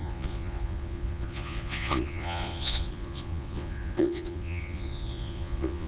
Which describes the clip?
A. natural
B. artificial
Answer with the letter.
B